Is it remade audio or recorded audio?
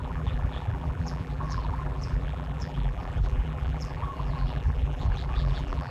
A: remade